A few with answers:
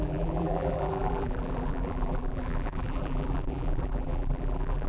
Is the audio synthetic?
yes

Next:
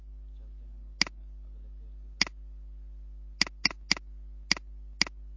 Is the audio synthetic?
no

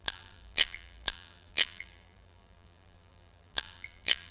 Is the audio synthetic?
yes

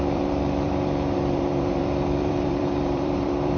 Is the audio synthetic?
yes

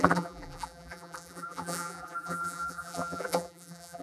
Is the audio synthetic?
yes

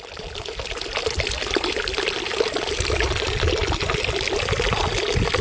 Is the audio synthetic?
no